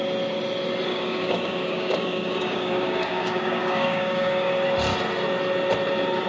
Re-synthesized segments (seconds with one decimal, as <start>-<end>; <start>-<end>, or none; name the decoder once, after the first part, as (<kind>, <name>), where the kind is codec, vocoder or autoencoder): 0.9-4.5 (codec, DAC)